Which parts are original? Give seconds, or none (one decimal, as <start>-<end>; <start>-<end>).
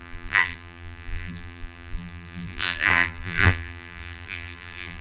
none